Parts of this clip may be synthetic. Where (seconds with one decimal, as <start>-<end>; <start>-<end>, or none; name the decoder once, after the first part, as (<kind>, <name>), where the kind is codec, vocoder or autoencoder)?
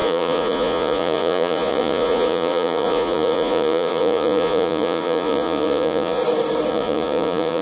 0.0-6.2 (vocoder, Vocos); 6.7-7.6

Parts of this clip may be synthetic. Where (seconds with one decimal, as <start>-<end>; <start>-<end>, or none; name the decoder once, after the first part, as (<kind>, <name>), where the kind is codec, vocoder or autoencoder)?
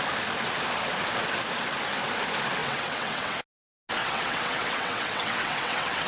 2.6-3.4 (vocoder, WaveNeXt); 4.0-6.1